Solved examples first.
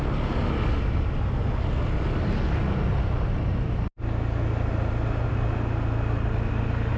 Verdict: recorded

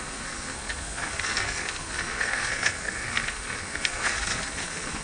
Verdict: remade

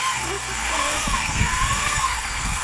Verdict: remade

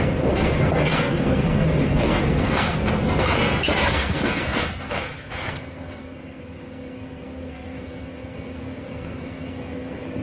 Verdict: remade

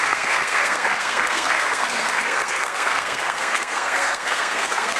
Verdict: remade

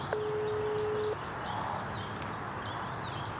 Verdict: recorded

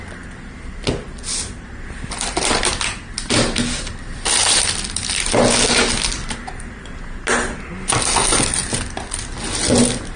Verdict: recorded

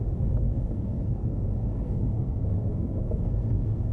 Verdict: remade